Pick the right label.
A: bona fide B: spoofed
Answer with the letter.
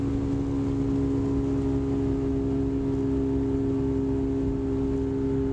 A